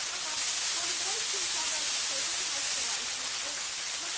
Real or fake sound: real